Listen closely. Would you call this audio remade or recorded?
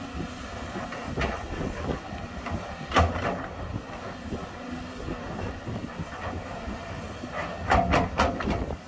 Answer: recorded